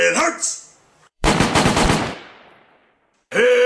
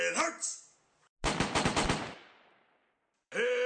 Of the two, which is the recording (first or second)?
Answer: second